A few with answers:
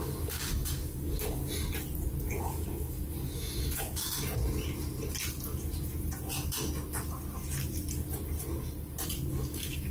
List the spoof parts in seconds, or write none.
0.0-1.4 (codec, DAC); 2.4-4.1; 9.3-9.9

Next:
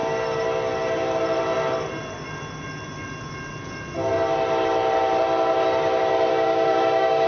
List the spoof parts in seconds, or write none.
6.3-7.3 (codec, DAC)

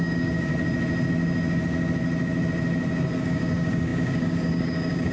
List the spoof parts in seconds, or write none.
0.0-0.5 (codec, DAC); 3.2-5.1

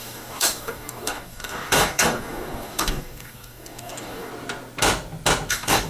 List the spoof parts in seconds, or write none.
0.0-4.3 (codec, DAC); 5.5-5.9

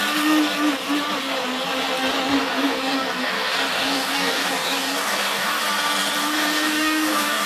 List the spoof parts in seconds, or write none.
2.4-5.6 (codec, DAC); 6.2-7.5

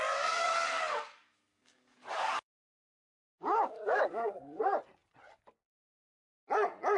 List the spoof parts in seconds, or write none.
0.4-4.6 (codec, DAC)

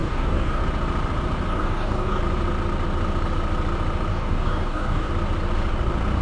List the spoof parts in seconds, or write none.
0.0-0.6 (codec, DAC); 1.5-2.2; 4.1-5.1

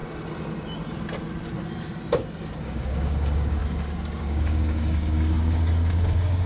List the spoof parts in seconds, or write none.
2.6-3.6 (codec, DAC); 4.2-6.5